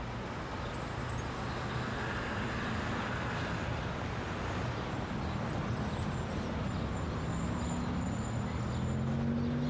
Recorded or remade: recorded